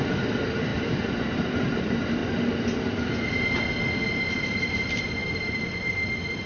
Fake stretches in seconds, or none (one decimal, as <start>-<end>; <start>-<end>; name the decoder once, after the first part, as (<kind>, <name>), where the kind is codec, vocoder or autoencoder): 0.0-2.2 (vocoder, BigVGAN v2); 4.4-6.5